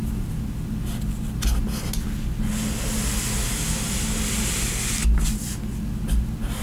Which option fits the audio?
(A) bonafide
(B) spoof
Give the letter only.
A